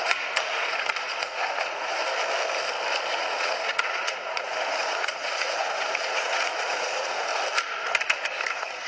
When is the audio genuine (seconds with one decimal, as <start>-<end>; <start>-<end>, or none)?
2.0-3.1; 7.3-8.5